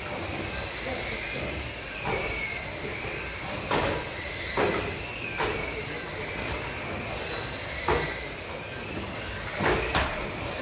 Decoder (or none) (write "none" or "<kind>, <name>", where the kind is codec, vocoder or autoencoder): none